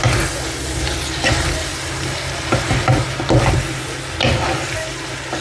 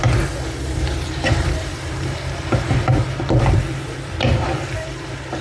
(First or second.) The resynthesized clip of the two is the second